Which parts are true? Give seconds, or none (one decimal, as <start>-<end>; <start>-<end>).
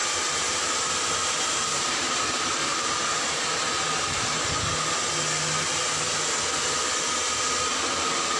4.6-8.4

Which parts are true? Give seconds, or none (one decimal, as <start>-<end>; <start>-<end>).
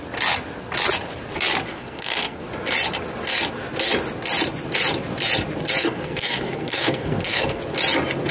0.0-1.7; 2.4-5.8; 7.6-8.3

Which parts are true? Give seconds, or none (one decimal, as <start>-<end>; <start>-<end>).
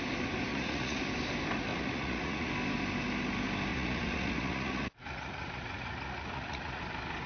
0.0-0.5; 1.0-1.7; 2.5-3.7; 6.8-7.3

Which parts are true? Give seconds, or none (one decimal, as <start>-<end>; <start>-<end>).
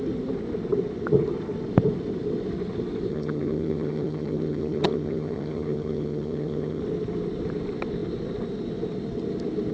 0.0-3.1; 6.8-9.7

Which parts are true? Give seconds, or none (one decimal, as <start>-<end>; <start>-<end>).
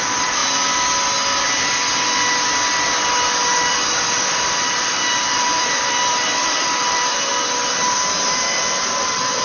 0.4-3.7; 7.3-7.9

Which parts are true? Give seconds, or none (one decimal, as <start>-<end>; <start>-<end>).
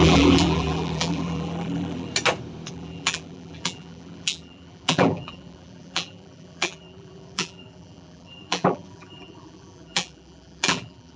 2.1-2.7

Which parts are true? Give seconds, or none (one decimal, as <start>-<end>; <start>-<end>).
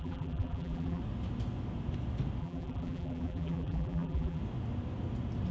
1.0-2.4; 4.4-5.5